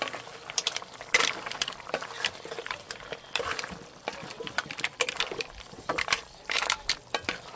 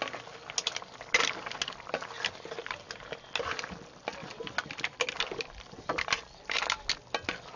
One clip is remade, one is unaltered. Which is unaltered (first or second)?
second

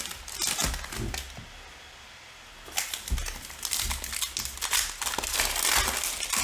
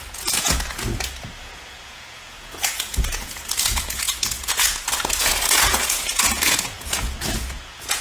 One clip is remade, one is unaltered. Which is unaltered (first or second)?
first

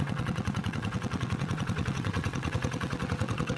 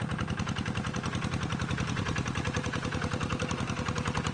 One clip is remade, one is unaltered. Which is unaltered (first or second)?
second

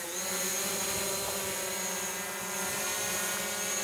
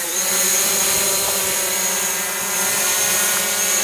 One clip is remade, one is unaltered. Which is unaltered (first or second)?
first